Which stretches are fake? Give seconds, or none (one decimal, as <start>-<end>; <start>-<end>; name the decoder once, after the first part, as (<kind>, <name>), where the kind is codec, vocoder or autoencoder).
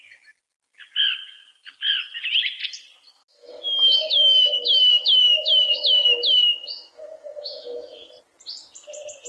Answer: 3.2-8.1 (autoencoder, DAC-VAE)